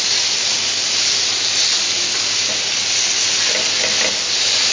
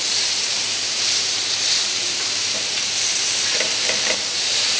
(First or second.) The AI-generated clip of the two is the second